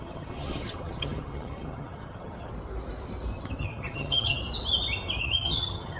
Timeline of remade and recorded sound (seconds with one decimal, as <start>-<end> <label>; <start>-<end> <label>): 0.0-2.5 remade; 2.5-3.6 recorded; 3.6-4.4 remade; 4.4-5.2 recorded; 5.2-6.0 remade